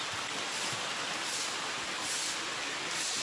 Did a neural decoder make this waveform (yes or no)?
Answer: no